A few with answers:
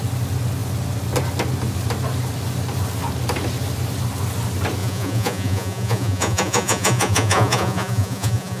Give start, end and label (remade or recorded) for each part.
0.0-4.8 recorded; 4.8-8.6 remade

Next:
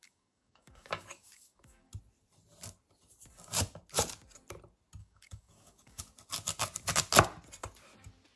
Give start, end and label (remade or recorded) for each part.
0.0-1.9 remade; 1.9-5.0 recorded; 5.0-6.0 remade; 6.0-8.4 recorded

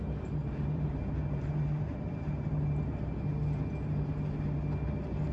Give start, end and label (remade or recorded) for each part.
0.0-0.4 recorded; 0.4-3.1 remade; 3.1-5.3 recorded